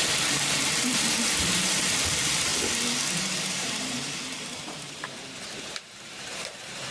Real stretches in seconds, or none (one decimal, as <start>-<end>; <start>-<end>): 2.5-3.5